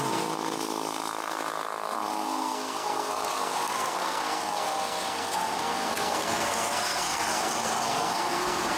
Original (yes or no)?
no